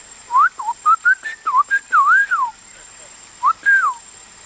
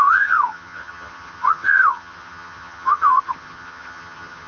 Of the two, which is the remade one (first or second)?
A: second